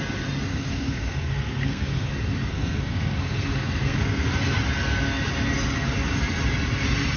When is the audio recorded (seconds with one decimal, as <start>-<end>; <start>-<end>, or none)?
0.0-0.5; 2.1-2.5; 4.3-7.2